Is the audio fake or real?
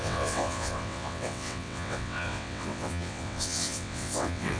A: fake